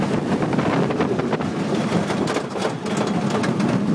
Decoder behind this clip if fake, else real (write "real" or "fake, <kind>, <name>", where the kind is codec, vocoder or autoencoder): real